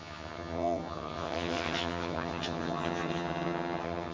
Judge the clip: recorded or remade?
remade